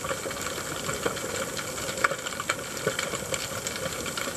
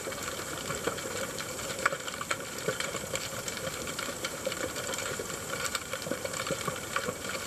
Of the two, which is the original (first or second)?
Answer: first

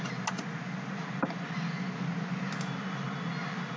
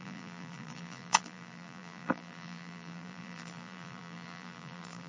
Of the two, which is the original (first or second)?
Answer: first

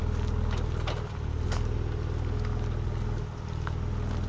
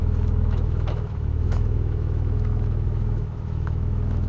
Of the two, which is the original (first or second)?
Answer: first